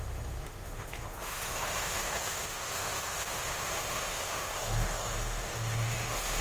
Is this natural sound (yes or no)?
no